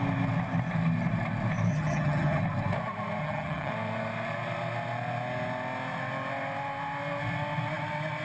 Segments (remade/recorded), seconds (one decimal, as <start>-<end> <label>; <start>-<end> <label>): 0.0-1.7 recorded; 1.7-2.4 remade; 2.4-3.2 recorded; 3.2-3.7 remade; 3.7-8.2 recorded

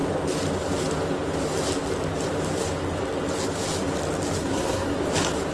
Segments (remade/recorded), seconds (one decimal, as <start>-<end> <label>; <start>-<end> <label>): 0.0-4.4 recorded; 4.4-5.0 remade; 5.0-5.5 recorded

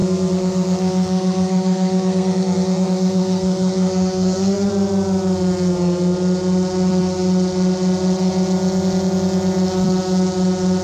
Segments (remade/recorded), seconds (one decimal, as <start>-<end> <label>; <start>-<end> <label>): 0.0-4.7 remade; 4.7-10.8 recorded

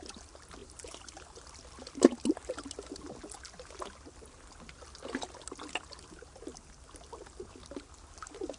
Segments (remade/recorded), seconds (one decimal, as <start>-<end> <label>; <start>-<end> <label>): 0.0-0.6 recorded; 0.6-1.5 remade; 1.5-8.6 recorded

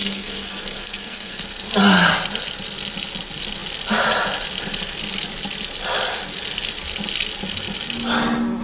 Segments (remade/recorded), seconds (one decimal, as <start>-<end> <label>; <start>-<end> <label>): 0.0-1.4 remade; 1.4-8.6 recorded

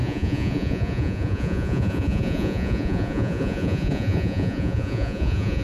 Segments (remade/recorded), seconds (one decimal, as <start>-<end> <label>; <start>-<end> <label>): 0.0-5.6 remade

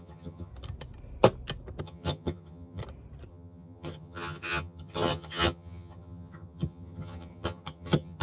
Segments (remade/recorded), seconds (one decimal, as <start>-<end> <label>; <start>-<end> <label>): 0.0-0.5 remade; 0.5-1.8 recorded; 1.8-2.8 remade; 2.8-3.3 recorded; 3.3-8.2 remade

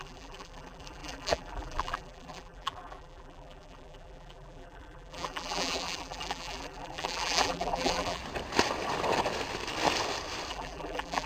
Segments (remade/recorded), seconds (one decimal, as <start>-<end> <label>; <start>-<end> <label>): 0.0-8.2 remade; 8.2-10.5 recorded; 10.5-11.3 remade